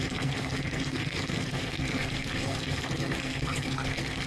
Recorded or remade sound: remade